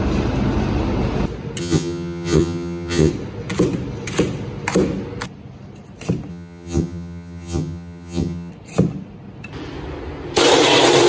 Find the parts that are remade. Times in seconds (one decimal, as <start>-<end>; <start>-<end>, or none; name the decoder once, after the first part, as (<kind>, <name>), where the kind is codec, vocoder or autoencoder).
1.6-3.1 (vocoder, HiFi-GAN); 6.3-8.5

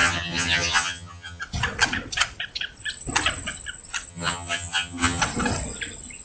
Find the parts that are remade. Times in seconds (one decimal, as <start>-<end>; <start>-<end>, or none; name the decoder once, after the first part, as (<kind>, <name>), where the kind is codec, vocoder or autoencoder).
0.0-1.4 (vocoder, HiFi-GAN); 4.1-5.2

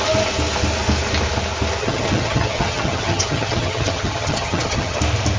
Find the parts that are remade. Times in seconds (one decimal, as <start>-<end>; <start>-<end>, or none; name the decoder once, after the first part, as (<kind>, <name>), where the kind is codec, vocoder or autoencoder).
1.8-5.0 (vocoder, HiFi-GAN)

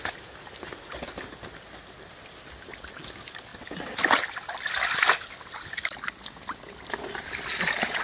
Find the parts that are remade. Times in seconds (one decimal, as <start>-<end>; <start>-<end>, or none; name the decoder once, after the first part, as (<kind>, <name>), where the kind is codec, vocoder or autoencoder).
none

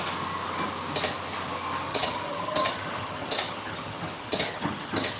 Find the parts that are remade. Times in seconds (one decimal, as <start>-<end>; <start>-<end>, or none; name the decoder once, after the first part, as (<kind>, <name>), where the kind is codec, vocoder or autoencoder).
1.9-5.2 (vocoder, HiFi-GAN)